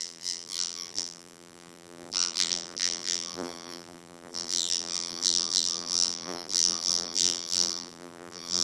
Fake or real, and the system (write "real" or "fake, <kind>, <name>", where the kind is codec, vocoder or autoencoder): fake, vocoder, BigVGAN v2